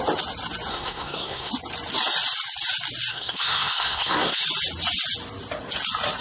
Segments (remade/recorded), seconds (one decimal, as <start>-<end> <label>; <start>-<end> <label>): 0.0-0.7 recorded; 0.7-1.5 remade; 1.5-3.1 recorded; 3.1-4.4 remade; 4.4-6.2 recorded